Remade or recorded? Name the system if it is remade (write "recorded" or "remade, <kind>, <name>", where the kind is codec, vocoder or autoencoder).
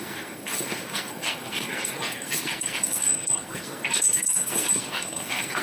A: remade, codec, SNAC